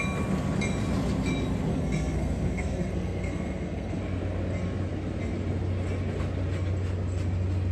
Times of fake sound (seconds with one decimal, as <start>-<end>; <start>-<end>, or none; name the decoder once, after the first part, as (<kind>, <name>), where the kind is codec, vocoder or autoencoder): 1.7-4.0 (codec, SNAC)